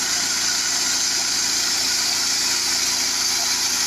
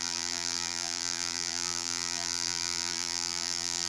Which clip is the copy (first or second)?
second